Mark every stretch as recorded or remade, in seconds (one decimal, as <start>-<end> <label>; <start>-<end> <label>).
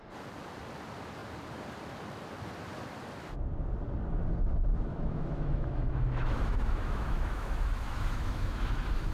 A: 0.0-4.9 recorded; 4.9-9.1 remade